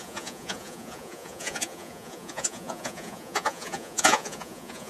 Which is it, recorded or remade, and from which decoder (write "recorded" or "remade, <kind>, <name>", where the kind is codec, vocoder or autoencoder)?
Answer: remade, vocoder, Vocos